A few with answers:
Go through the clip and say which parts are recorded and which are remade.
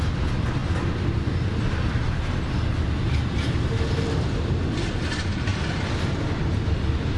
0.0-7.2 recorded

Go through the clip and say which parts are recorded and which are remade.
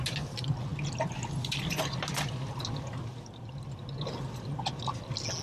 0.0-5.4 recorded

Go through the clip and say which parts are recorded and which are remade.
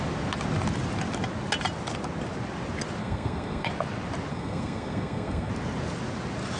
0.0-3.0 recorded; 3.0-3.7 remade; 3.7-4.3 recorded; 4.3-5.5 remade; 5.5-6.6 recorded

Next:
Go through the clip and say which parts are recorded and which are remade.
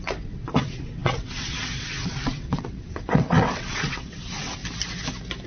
0.0-4.6 remade; 4.6-5.5 recorded